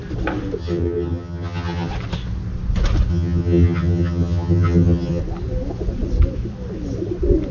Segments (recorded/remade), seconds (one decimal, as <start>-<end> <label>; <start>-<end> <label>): 0.0-0.6 recorded; 0.6-1.9 remade; 1.9-3.1 recorded; 3.1-5.2 remade; 5.2-7.5 recorded